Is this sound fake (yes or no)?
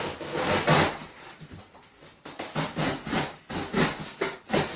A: no